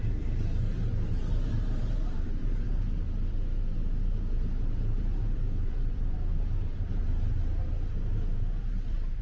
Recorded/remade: remade